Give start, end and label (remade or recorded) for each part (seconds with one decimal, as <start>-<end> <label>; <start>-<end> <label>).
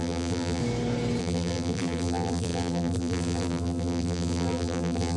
0.0-0.6 remade; 0.6-1.2 recorded; 1.2-5.2 remade